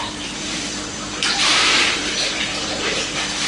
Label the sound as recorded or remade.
remade